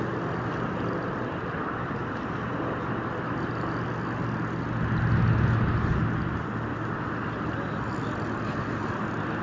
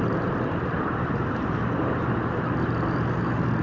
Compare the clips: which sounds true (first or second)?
first